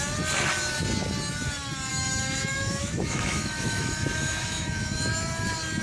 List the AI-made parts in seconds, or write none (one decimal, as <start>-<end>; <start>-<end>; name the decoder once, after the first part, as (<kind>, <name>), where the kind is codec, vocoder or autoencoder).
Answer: 1.9-5.1 (autoencoder, DAC-VAE)

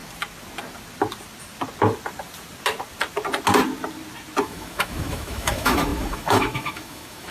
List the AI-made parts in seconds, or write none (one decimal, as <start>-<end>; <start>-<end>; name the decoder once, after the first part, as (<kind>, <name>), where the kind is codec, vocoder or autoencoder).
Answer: 4.4-7.3 (autoencoder, DAC-VAE)

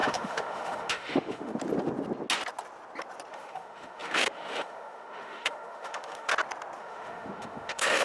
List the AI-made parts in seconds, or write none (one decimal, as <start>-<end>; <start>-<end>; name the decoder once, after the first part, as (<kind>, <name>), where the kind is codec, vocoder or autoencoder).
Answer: 0.0-1.5 (autoencoder, DAC-VAE); 3.3-6.3; 6.8-8.0

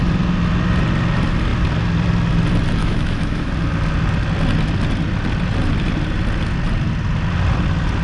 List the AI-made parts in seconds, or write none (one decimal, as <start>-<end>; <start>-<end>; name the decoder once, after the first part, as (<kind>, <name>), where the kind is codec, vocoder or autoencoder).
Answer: 2.8-3.5 (autoencoder, DAC-VAE)

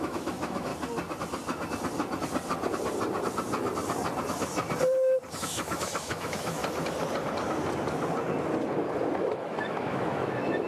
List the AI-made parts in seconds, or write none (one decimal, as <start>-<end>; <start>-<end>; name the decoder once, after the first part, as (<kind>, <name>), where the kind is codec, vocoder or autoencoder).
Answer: 0.0-0.7 (autoencoder, DAC-VAE); 5.4-6.6; 9.2-10.7

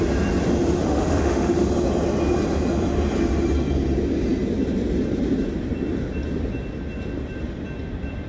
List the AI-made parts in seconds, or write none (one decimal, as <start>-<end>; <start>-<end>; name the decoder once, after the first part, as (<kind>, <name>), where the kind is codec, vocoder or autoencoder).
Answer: 0.8-1.7 (autoencoder, DAC-VAE)

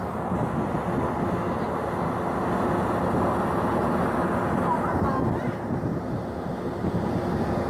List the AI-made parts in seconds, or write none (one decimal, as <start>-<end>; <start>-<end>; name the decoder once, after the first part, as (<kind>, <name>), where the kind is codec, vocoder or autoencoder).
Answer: none

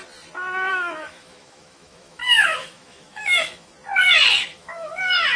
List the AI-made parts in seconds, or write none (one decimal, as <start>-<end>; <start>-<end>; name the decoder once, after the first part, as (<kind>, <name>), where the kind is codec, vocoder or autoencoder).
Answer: 0.7-3.7 (autoencoder, DAC-VAE); 4.5-5.0